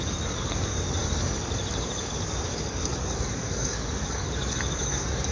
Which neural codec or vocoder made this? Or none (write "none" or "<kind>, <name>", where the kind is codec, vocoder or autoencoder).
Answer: codec, DAC